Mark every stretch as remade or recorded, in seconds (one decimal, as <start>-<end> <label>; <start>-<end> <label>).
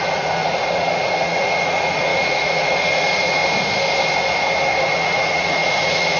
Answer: 0.0-3.4 remade; 3.4-4.8 recorded; 4.8-6.2 remade